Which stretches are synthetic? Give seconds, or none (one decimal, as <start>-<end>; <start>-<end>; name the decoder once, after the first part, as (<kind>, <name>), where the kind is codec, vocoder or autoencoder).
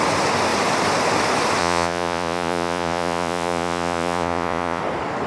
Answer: 1.6-4.8 (vocoder, Vocos)